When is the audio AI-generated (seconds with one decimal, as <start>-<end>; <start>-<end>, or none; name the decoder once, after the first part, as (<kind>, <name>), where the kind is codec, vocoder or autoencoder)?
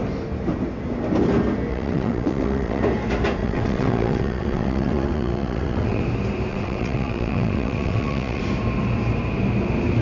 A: 1.7-2.8 (vocoder, WaveNeXt); 3.4-6.0; 6.5-8.4